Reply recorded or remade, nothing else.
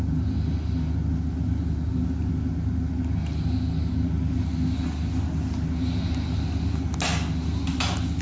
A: recorded